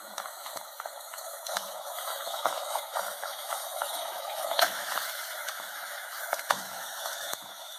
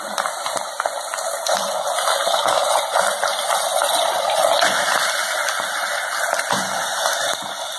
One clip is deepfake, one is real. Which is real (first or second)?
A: second